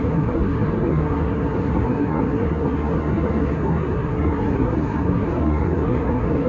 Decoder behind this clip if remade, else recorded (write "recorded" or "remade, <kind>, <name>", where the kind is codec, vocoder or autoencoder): remade, codec, SNAC